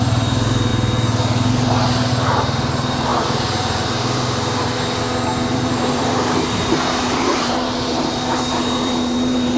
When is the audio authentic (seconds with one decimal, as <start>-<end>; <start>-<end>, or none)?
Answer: 0.7-2.1